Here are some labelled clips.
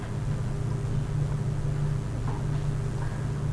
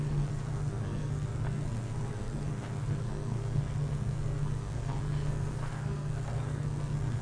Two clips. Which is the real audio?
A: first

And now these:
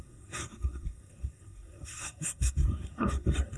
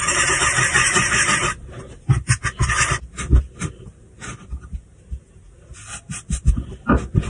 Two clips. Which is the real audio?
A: second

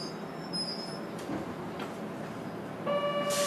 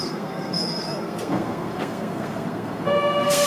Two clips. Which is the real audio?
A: first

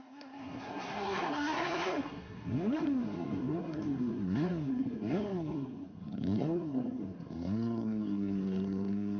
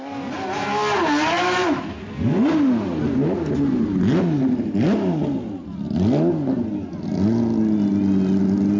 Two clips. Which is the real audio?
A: second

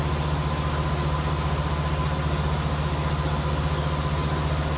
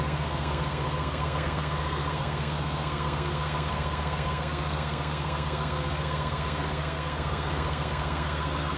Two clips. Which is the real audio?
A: first